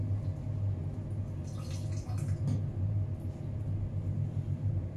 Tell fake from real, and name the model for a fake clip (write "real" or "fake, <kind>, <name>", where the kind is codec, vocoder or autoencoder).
real